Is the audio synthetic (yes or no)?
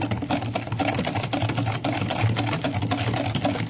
no